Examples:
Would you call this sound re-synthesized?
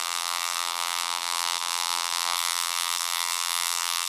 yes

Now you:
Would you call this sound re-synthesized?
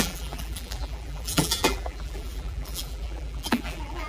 yes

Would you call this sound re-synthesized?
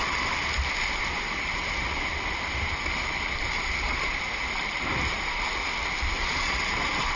no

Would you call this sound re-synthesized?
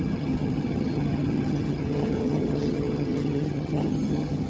yes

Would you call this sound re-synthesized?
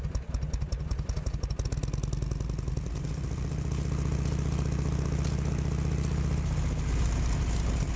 no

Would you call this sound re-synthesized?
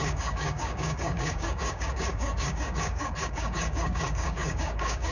yes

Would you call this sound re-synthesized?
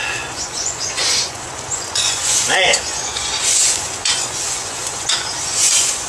yes